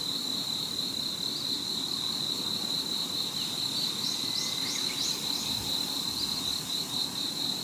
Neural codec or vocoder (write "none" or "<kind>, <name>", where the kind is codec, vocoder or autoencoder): none